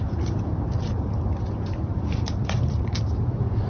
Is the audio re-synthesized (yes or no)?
yes